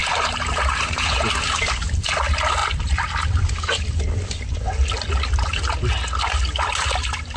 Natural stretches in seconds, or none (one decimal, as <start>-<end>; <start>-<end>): 1.3-7.4

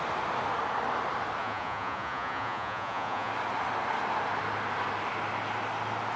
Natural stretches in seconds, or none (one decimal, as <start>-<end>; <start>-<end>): 0.0-1.4; 3.3-6.2